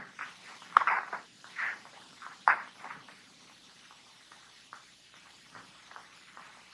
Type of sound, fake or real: fake